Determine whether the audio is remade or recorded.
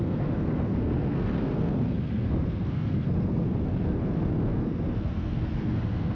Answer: remade